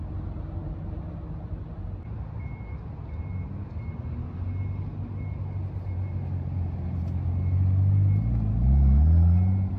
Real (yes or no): yes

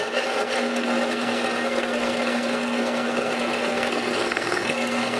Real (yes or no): no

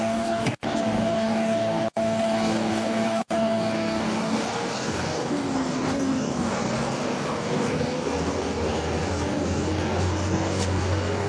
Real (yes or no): no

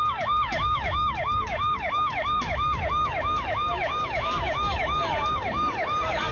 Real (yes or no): no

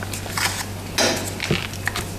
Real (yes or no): yes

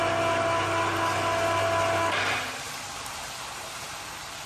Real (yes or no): yes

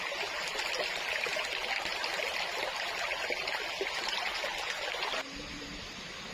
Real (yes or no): yes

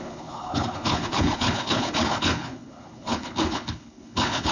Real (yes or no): no